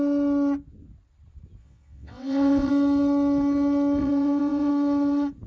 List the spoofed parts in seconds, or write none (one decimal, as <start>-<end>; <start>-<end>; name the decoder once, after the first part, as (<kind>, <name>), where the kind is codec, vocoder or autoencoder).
1.6-2.7 (vocoder, WaveNeXt); 4.0-4.7